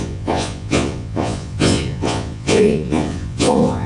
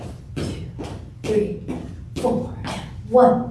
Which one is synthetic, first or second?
first